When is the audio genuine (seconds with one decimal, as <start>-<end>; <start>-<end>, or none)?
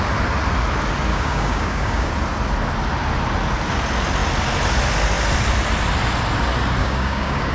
0.0-1.1; 2.1-6.8